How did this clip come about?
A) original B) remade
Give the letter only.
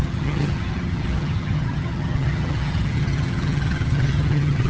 B